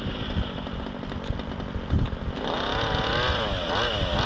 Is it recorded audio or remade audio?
recorded